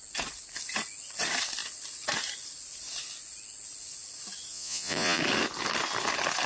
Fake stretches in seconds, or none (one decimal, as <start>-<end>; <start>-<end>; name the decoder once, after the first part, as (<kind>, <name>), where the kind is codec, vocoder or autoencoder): 4.5-5.2 (vocoder, Vocos)